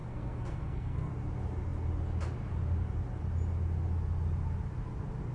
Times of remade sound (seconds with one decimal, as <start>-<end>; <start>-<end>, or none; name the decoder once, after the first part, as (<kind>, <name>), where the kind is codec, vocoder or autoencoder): 0.0-1.1 (codec, SNAC)